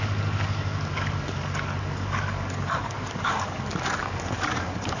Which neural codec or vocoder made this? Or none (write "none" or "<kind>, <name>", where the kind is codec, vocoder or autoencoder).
codec, DAC